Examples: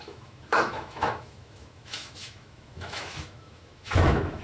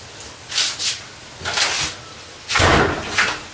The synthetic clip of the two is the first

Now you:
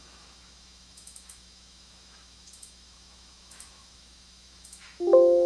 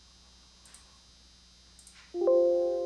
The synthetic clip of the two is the first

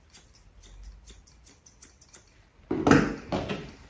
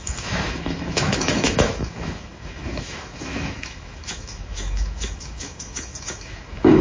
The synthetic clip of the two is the second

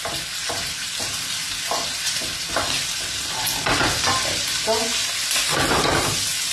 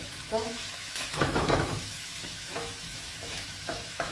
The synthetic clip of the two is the second